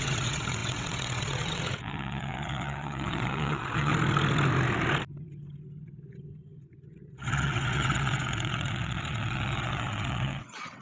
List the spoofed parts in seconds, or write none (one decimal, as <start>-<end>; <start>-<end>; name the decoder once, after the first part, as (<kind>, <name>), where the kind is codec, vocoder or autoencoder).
0.0-3.9 (vocoder, WaveNeXt); 6.9-10.8